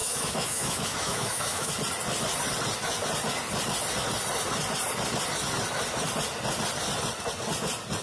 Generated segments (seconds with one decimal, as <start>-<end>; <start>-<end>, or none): 0.0-1.7